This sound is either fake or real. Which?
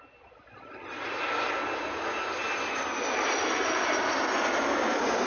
real